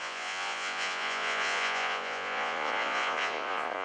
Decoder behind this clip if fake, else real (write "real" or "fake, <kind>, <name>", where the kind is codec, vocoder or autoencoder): fake, vocoder, Vocos